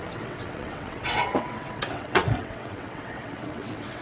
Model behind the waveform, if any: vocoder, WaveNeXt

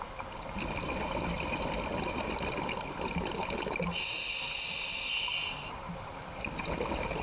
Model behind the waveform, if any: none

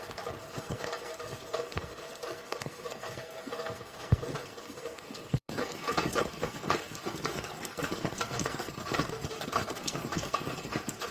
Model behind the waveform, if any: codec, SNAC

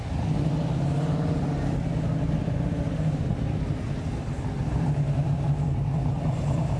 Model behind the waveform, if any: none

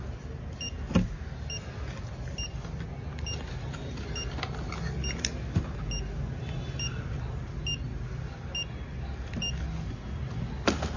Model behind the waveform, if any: none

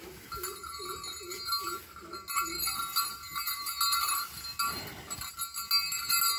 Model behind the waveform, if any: none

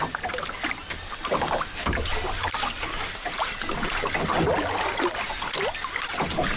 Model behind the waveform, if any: none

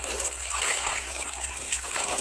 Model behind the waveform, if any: codec, SNAC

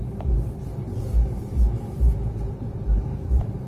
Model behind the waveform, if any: vocoder, BigVGAN v2